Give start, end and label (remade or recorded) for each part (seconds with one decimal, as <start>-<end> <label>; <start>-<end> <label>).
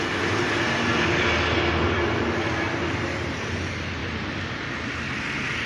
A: 0.0-4.0 recorded; 4.0-5.2 remade; 5.2-5.7 recorded